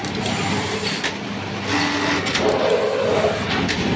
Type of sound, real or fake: real